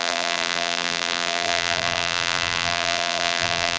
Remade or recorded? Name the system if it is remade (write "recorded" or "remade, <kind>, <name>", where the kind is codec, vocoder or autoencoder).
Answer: remade, vocoder, BigVGAN v2